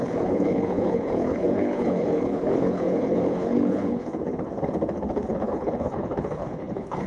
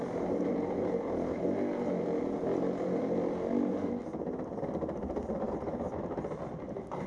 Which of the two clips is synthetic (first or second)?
first